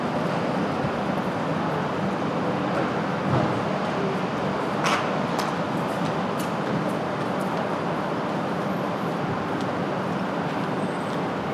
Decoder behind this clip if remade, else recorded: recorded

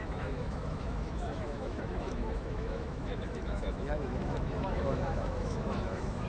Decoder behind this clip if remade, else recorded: remade, autoencoder, DAC-VAE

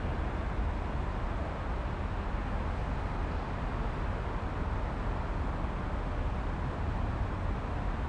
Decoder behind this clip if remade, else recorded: recorded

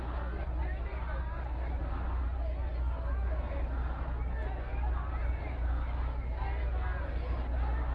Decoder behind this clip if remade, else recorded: recorded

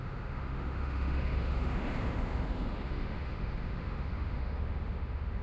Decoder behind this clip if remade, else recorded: remade, autoencoder, DAC-VAE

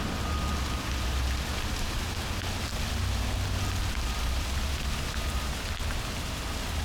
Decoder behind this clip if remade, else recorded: recorded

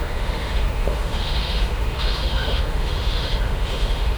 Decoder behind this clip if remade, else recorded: remade, autoencoder, DAC-VAE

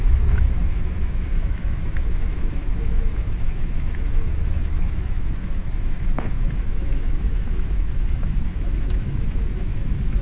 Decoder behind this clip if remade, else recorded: remade, autoencoder, DAC-VAE